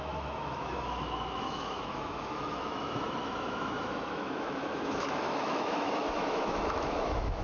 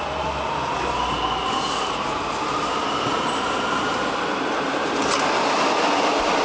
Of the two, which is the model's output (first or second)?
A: first